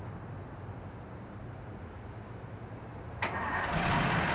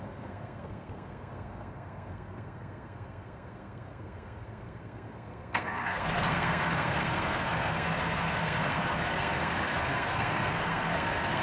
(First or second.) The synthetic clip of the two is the second